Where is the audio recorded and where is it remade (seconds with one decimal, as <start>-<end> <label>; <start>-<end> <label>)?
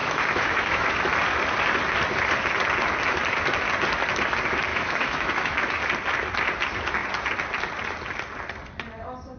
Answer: 0.0-0.9 remade; 0.9-4.7 recorded; 4.7-5.8 remade; 5.8-9.4 recorded